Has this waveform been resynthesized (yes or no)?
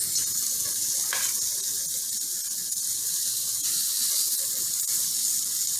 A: no